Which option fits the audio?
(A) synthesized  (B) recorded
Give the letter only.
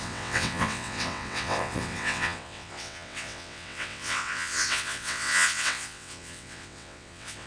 A